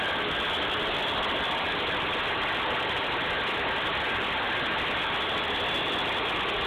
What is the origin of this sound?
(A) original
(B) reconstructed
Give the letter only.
A